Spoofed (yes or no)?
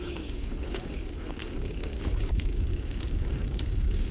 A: yes